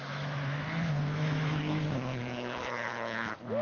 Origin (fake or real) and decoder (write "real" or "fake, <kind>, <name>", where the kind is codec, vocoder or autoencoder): fake, autoencoder, DAC-VAE